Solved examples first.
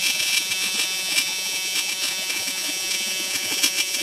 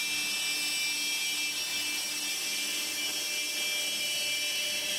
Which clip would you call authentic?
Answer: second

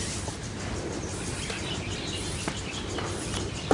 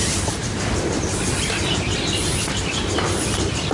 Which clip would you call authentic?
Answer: first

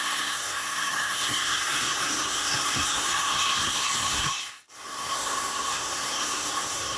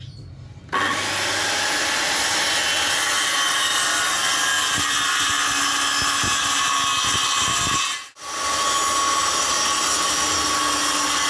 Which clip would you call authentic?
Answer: second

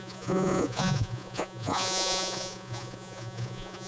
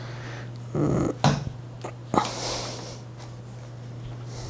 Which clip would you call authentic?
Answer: second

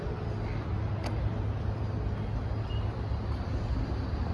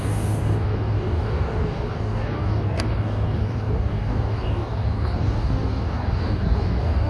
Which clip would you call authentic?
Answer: first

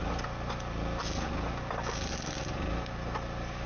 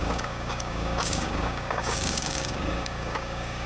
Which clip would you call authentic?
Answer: first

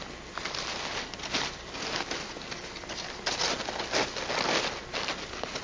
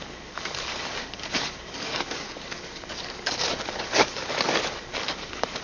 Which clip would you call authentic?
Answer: first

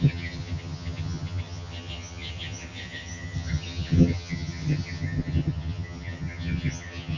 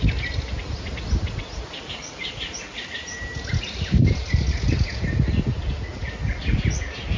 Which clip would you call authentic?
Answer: second